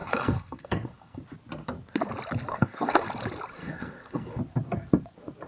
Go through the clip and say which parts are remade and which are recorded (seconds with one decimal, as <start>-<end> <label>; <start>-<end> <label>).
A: 0.0-1.2 remade; 1.2-2.5 recorded; 2.5-3.1 remade; 3.1-3.6 recorded; 3.6-4.4 remade; 4.4-5.5 recorded